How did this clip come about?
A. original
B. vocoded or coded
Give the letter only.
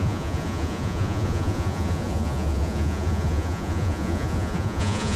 B